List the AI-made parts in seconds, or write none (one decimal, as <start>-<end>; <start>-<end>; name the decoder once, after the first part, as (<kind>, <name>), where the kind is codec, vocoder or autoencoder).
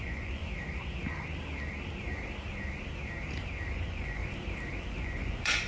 0.0-0.4 (vocoder, Vocos); 3.7-4.2; 4.8-5.7